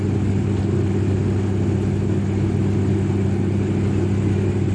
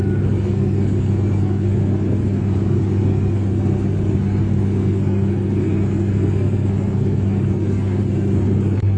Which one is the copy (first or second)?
second